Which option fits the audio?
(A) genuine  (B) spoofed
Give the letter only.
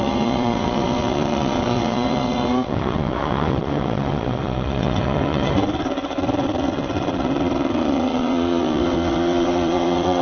B